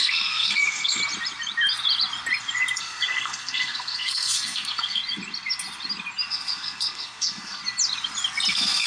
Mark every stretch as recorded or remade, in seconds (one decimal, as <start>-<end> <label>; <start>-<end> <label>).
0.0-1.0 remade; 1.0-2.8 recorded; 2.8-5.0 remade; 5.0-6.3 recorded; 6.3-7.6 remade; 7.6-8.5 recorded; 8.5-8.9 remade